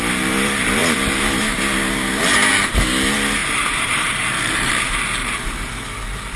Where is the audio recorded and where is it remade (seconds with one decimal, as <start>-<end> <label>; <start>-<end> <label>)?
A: 0.0-3.4 recorded; 3.4-4.7 remade; 4.7-5.2 recorded; 5.2-5.7 remade; 5.7-6.4 recorded